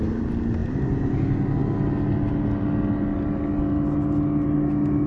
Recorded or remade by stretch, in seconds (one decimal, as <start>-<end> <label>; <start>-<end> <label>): 0.0-0.6 recorded; 0.6-1.2 remade; 1.2-5.1 recorded